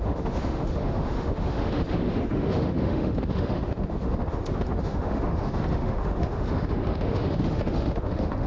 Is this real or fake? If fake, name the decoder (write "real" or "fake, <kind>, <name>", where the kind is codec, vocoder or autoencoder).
fake, autoencoder, DAC-VAE